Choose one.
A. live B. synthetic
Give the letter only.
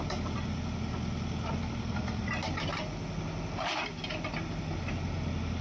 A